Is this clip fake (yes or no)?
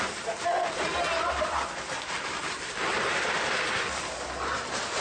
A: no